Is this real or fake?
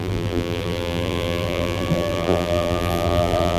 fake